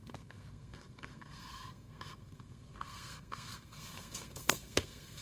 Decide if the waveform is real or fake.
fake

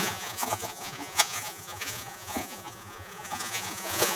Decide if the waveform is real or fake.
fake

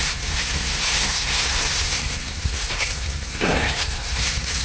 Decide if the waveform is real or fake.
fake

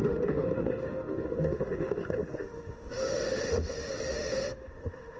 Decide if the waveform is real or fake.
fake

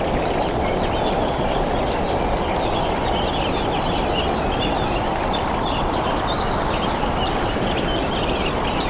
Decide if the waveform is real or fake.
real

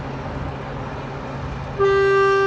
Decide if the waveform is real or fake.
real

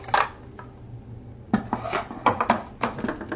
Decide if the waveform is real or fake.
real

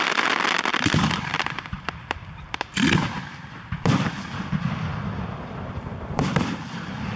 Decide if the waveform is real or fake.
fake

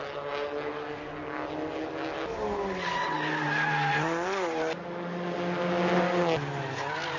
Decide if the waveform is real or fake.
real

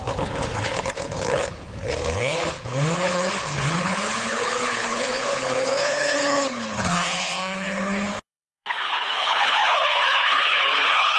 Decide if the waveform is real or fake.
fake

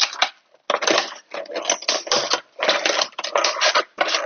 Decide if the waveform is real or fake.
real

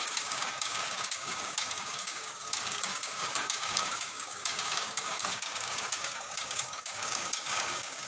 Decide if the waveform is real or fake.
fake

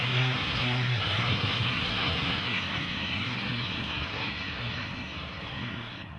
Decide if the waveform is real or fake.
fake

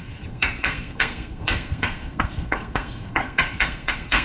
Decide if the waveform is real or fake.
fake